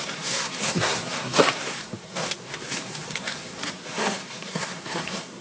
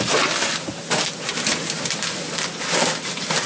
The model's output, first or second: first